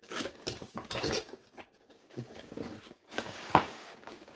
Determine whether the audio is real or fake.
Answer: fake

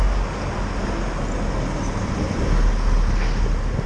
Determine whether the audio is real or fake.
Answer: real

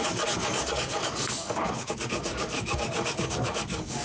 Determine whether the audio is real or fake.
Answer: fake